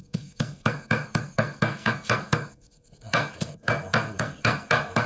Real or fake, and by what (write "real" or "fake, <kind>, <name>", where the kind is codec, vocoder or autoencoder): fake, codec, SNAC